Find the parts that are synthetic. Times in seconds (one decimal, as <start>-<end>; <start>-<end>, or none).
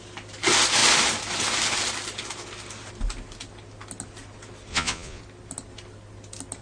4.7-5.2